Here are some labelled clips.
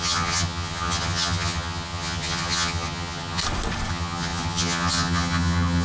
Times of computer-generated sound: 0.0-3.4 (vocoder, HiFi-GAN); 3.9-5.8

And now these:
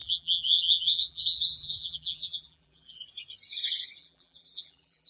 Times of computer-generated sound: 0.0-3.0 (vocoder, BigVGAN v2); 4.0-5.1

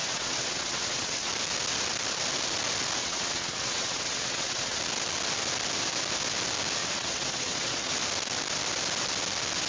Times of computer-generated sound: 0.0-1.3 (vocoder, WaveNeXt); 3.0-4.8; 6.8-7.9